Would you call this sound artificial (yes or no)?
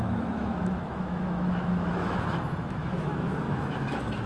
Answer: yes